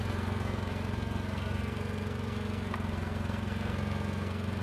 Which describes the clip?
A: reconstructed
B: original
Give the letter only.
A